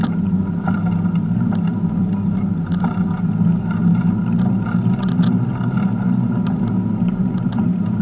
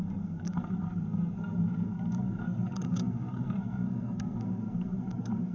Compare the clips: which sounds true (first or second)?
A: first